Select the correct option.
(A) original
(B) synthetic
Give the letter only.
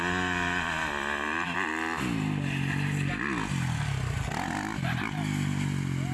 A